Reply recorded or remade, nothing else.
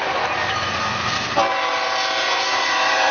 recorded